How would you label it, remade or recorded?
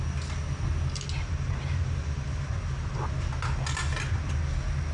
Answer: recorded